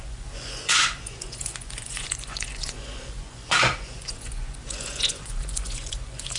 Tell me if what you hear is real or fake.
fake